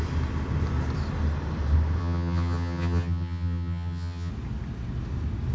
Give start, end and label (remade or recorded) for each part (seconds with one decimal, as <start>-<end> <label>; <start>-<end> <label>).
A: 0.0-2.0 recorded; 2.0-4.3 remade; 4.3-5.5 recorded